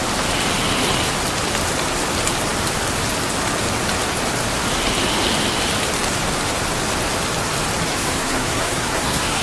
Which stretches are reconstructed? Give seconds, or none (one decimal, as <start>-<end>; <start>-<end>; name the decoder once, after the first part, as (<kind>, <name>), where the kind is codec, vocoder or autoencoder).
7.9-9.4 (codec, SNAC)

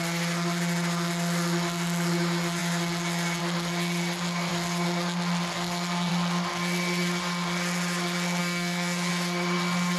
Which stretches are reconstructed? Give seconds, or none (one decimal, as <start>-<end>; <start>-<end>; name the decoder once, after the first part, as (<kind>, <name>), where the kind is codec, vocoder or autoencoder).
8.4-9.1 (codec, SNAC)

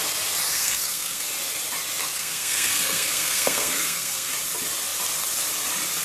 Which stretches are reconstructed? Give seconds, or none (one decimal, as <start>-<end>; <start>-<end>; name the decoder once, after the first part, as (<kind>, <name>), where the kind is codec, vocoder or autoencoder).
0.5-1.3 (codec, SNAC); 2.0-4.3

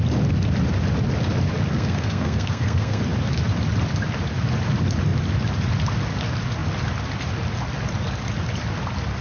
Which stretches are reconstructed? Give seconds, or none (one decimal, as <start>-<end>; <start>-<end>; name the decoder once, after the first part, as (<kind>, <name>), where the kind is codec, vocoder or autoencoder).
1.7-3.0 (codec, SNAC)

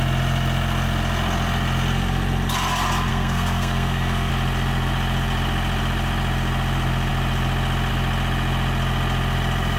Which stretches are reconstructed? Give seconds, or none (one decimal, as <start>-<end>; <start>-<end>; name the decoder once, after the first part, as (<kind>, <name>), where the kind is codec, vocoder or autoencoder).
3.1-4.3 (codec, SNAC)